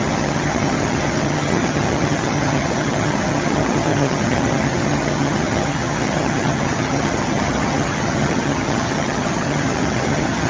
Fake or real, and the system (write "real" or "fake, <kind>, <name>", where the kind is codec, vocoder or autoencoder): fake, vocoder, HiFi-GAN